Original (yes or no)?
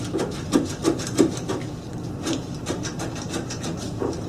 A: yes